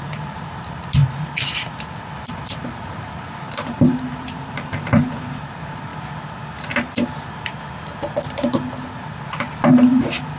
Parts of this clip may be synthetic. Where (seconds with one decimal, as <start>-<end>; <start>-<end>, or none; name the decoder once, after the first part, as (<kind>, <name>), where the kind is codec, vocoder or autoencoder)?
0.0-1.0 (vocoder, BigVGAN v2); 2.3-5.9; 9.7-10.4